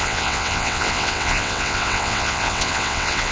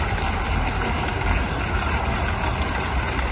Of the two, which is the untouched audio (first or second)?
second